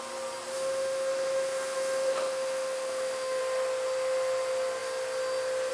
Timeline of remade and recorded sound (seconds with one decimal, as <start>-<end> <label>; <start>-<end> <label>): 0.0-0.5 recorded; 0.5-3.4 remade; 3.4-5.7 recorded